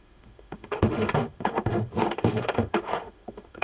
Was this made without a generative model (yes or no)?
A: no